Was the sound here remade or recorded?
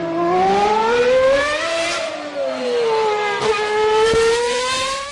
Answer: remade